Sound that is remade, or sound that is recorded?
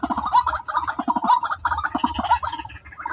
recorded